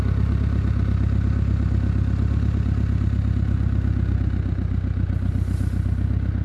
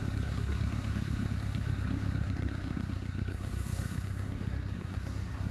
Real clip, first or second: first